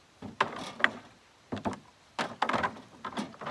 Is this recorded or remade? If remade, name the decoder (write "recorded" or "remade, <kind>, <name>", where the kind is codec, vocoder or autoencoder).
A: recorded